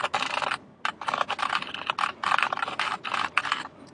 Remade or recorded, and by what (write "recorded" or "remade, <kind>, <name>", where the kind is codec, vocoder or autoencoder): recorded